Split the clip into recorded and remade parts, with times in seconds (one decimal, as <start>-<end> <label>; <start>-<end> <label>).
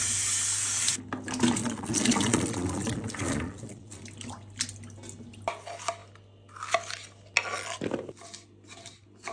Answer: 0.0-1.6 recorded; 1.6-4.0 remade; 4.0-9.3 recorded